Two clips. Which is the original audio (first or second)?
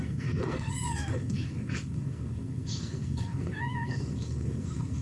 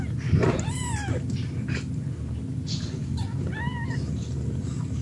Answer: second